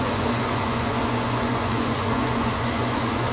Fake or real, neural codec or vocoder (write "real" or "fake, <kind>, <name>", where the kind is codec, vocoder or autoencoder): fake, vocoder, Vocos